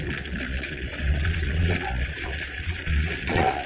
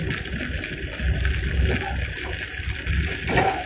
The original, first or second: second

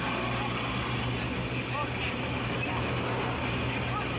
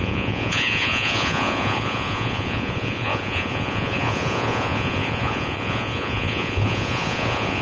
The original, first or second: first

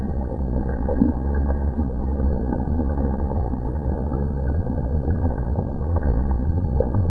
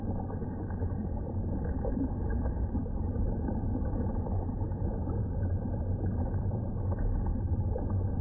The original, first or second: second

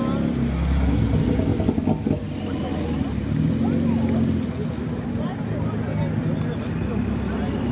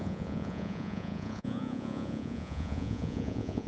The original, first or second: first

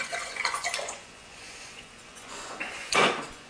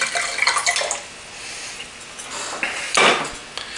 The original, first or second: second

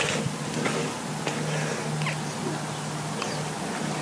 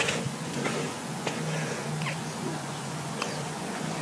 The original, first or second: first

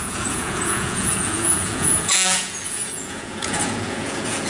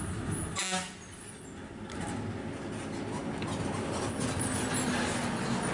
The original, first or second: second